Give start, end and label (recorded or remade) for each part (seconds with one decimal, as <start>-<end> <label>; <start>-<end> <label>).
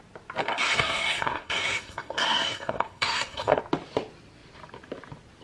0.0-0.4 recorded; 0.4-3.6 remade; 3.6-5.4 recorded